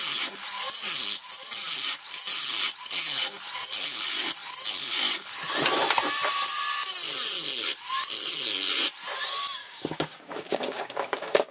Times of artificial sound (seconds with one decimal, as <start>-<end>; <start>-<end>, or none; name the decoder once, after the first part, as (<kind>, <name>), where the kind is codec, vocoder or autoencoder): 9.6-11.5 (codec, DAC)